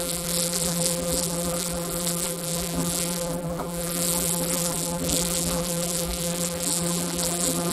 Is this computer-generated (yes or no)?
yes